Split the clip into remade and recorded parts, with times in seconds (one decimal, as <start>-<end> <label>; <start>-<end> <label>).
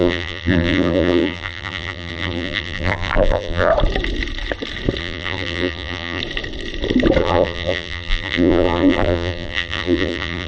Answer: 0.0-3.7 remade; 3.7-5.0 recorded; 5.0-6.2 remade; 6.2-7.2 recorded; 7.2-10.5 remade